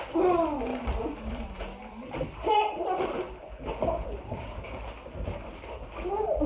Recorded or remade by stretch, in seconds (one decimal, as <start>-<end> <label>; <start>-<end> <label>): 0.0-0.7 recorded; 0.7-4.6 remade; 4.6-6.5 recorded